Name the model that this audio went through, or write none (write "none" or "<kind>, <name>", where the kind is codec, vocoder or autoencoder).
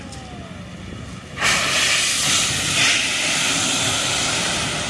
none